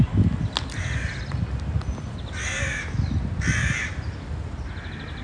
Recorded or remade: recorded